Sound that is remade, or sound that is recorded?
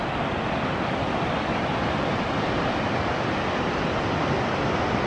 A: recorded